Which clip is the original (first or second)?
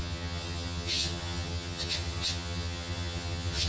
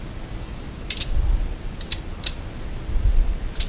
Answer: second